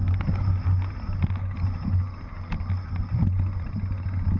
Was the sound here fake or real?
real